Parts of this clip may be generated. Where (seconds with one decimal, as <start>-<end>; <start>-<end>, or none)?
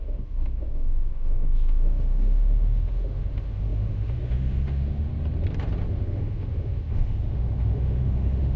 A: 0.0-5.1; 5.9-8.6